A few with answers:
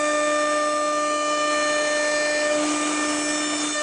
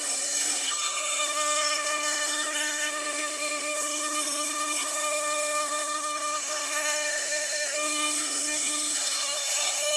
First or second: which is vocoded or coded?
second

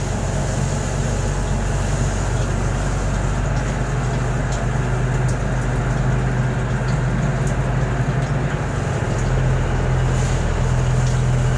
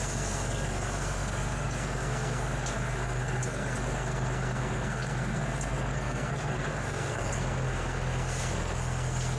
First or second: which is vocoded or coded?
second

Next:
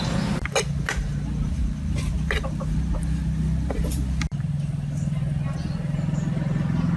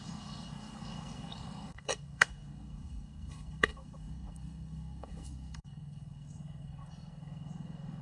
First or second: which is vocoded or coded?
second